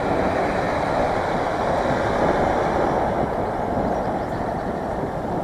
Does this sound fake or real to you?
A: real